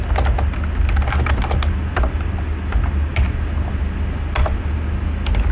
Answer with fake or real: real